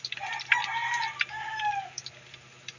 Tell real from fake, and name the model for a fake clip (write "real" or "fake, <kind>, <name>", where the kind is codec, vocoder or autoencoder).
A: real